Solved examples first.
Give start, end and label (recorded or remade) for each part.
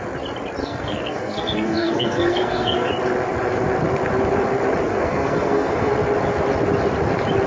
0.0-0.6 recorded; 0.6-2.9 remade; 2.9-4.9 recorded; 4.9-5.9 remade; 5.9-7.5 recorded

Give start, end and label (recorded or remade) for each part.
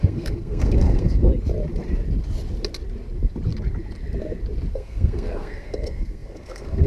0.0-1.3 remade; 1.3-4.7 recorded; 4.7-6.9 remade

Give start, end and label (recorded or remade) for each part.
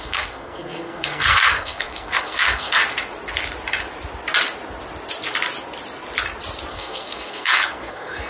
0.0-2.8 remade; 2.8-6.7 recorded; 6.7-8.3 remade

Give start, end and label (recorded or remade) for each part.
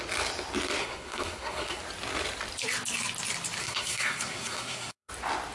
0.0-0.8 recorded; 0.8-1.8 remade; 1.8-3.6 recorded; 3.6-5.1 remade; 5.1-5.5 recorded